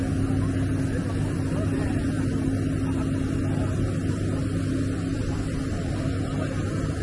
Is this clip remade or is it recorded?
recorded